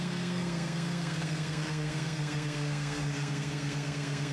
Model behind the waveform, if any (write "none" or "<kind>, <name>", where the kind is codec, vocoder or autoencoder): codec, SNAC